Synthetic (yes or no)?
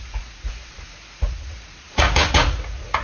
yes